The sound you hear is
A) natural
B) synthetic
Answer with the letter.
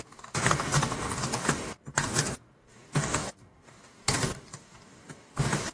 B